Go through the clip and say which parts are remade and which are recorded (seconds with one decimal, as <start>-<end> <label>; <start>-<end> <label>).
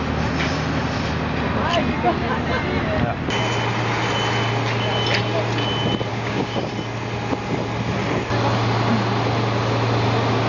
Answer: 0.0-6.1 recorded; 6.1-6.7 remade; 6.7-10.5 recorded